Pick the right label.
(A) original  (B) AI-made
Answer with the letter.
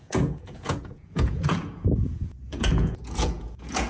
B